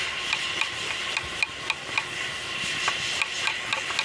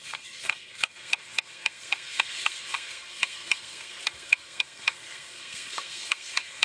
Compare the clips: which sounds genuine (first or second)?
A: first